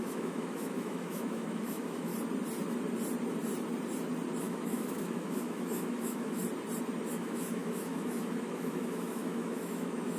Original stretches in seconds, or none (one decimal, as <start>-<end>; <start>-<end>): 2.1-4.4; 6.4-7.1